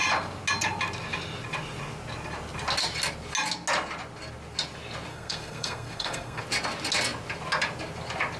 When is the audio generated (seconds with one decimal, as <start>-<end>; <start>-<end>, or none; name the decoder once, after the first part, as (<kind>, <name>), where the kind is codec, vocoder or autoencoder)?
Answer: 5.1-6.4 (codec, SNAC)